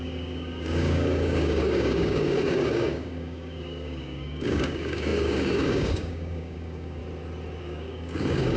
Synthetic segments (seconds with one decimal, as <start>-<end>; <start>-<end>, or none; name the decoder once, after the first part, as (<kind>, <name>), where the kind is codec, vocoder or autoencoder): 0.0-7.0 (codec, DAC); 7.6-8.6